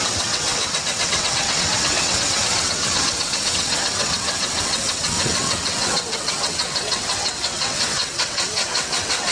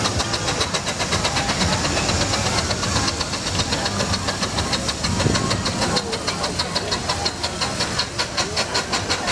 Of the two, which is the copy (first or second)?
first